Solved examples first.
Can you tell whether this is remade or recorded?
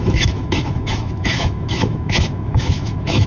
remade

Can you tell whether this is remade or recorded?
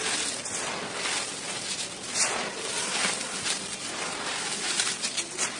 recorded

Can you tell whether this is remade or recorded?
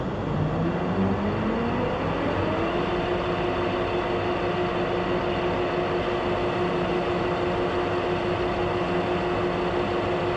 recorded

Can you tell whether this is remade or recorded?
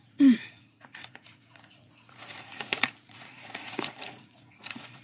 remade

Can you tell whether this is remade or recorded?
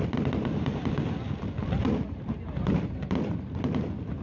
remade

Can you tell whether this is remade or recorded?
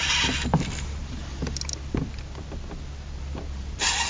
recorded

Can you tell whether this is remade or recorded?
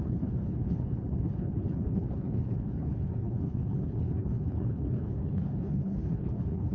remade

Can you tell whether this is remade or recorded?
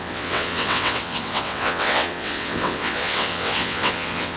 remade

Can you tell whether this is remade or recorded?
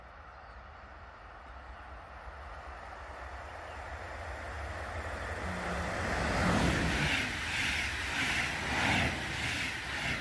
recorded